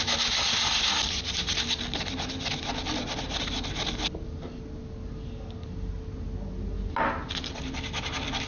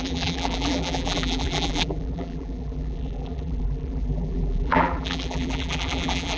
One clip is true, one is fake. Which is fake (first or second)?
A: second